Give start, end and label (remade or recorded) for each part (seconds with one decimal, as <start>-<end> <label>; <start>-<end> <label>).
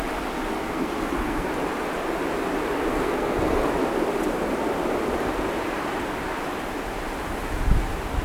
0.0-0.6 recorded; 0.6-1.5 remade; 1.5-2.9 recorded; 2.9-3.5 remade; 3.5-8.2 recorded